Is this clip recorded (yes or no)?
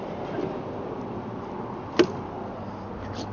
yes